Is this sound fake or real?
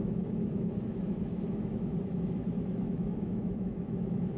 fake